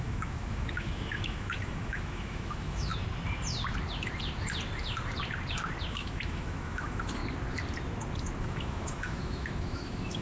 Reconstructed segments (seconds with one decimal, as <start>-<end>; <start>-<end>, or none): 0.0-2.9; 5.9-7.2; 8.4-10.2